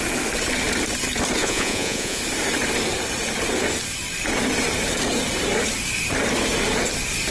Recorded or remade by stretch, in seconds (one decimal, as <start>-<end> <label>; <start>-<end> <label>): 0.0-1.4 recorded; 1.4-2.2 remade; 2.2-7.3 recorded